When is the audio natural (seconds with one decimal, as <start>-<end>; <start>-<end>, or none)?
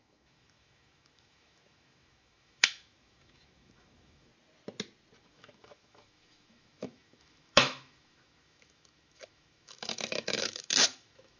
4.3-5.2